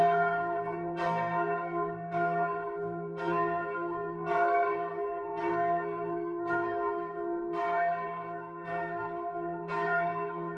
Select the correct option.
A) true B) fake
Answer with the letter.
B